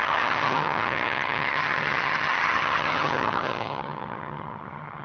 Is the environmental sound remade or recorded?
remade